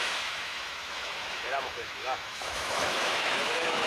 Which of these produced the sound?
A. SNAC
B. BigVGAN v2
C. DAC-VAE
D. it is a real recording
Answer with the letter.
C